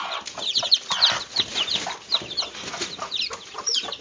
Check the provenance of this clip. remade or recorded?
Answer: recorded